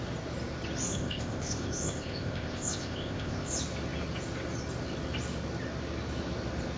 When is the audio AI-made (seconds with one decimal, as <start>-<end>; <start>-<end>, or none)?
0.9-3.5